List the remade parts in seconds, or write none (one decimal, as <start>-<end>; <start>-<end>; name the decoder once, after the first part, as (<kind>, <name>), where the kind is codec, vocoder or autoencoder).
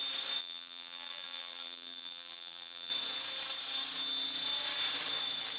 0.4-2.9 (vocoder, BigVGAN v2)